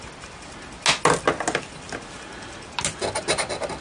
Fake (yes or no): no